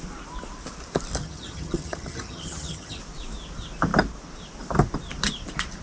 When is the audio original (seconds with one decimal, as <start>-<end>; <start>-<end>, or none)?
0.0-1.2; 3.0-5.8